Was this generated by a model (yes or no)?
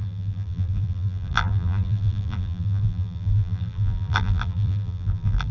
yes